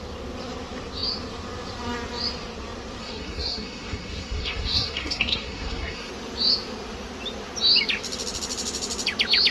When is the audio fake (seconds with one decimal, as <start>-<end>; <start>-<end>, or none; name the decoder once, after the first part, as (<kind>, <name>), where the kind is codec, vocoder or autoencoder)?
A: 3.0-6.1 (codec, SNAC)